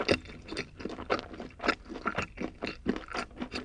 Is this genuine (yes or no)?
yes